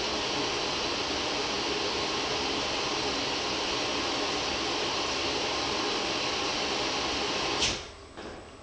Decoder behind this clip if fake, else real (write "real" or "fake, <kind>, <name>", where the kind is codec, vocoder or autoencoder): real